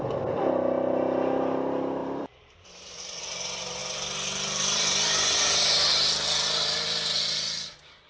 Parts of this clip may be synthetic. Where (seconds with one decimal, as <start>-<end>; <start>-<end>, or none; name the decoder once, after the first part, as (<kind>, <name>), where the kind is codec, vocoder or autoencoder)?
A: 2.0-3.2 (vocoder, BigVGAN v2)